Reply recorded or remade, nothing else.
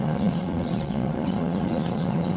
remade